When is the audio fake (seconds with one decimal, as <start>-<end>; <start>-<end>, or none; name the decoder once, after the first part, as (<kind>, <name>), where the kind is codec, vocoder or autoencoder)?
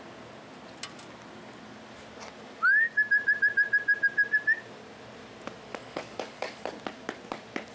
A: 5.7-6.7 (codec, DAC)